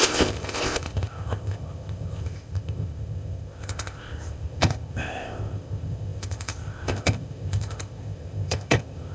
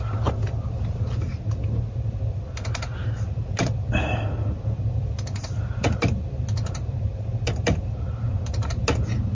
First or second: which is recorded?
second